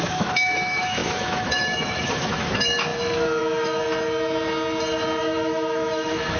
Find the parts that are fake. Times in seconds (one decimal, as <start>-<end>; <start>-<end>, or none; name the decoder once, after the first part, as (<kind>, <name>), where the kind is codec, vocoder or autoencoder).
0.0-3.8 (autoencoder, DAC-VAE); 5.2-6.4